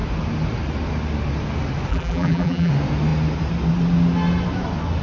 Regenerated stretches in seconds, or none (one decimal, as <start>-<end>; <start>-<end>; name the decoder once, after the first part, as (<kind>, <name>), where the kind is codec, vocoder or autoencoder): 1.9-2.7 (vocoder, BigVGAN v2)